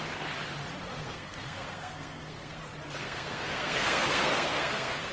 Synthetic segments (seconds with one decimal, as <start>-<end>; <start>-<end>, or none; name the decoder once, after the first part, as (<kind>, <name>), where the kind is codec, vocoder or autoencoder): 0.9-2.6 (codec, SNAC); 3.0-5.1